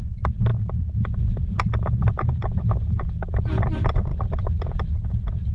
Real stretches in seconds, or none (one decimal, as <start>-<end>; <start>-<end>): 0.0-0.5; 1.4-4.1; 4.7-5.5